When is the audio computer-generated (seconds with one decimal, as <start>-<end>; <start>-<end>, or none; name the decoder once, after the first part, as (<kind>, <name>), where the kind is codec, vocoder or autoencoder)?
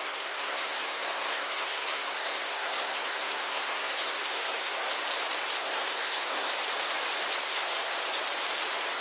0.0-4.9 (codec, SNAC); 5.6-6.5; 7.4-7.9